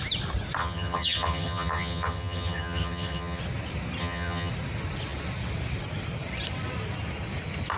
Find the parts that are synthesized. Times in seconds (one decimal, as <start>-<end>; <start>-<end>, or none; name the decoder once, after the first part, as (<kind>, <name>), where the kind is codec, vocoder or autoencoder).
0.6-3.4 (vocoder, HiFi-GAN); 4.0-4.5